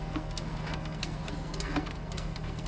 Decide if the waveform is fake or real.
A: fake